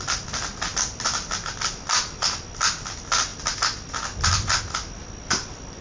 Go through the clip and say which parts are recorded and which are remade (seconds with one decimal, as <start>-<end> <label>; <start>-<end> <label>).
0.0-5.8 recorded